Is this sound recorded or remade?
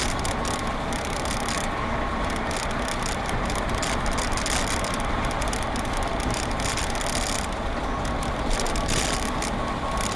remade